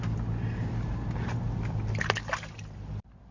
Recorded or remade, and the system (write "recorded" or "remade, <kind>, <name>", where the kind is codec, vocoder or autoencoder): recorded